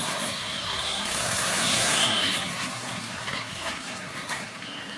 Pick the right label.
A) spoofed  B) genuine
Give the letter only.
A